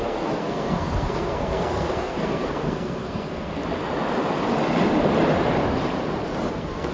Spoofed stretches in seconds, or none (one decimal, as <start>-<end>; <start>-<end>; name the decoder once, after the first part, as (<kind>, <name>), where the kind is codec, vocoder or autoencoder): 0.0-3.6 (codec, SNAC); 6.5-6.9